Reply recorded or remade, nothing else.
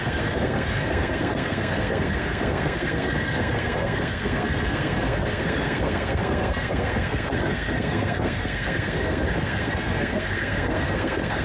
remade